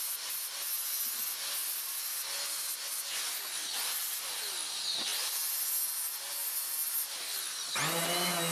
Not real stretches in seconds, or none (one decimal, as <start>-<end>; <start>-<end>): none